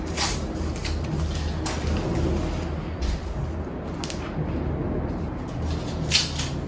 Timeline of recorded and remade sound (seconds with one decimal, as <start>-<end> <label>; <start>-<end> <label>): 0.0-6.7 recorded